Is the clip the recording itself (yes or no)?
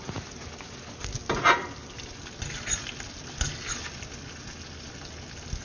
yes